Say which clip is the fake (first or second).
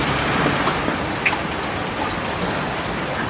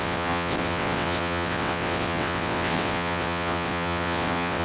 second